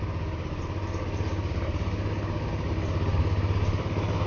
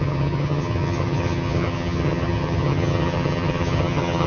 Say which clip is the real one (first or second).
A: first